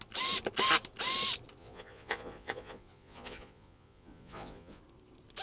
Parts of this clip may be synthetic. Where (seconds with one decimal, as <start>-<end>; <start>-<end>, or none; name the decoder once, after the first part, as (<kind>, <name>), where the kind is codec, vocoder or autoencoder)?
1.6-4.8 (vocoder, Vocos)